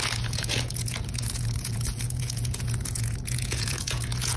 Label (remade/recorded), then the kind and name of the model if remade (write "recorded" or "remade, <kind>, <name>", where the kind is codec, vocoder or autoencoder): remade, vocoder, Vocos